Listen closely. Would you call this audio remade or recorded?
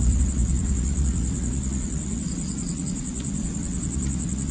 remade